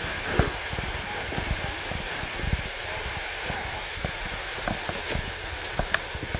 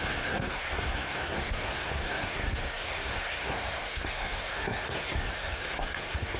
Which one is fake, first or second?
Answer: second